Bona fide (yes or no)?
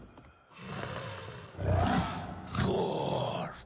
yes